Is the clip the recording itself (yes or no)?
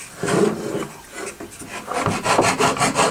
yes